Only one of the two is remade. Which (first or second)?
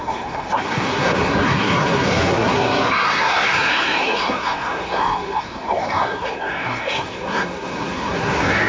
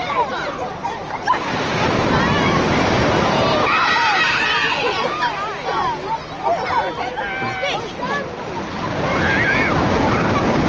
first